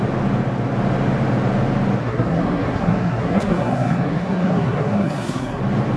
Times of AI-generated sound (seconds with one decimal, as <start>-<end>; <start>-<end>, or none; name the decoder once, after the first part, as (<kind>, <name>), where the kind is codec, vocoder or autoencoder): 2.0-5.6 (codec, SNAC)